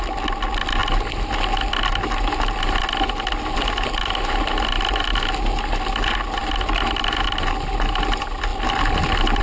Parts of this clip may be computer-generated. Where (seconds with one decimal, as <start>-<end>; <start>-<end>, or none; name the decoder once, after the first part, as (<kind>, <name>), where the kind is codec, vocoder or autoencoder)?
none